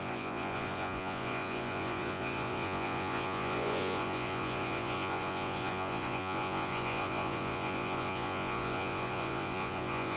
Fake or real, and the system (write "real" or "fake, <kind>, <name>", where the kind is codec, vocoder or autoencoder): fake, vocoder, Vocos